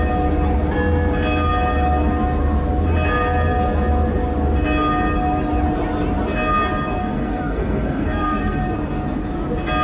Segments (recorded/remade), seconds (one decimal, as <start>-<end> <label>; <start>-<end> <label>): 0.0-7.0 recorded; 7.0-8.6 remade; 8.6-9.8 recorded